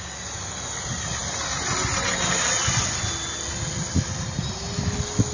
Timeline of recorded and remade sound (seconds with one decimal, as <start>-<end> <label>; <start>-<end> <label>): 0.0-5.3 recorded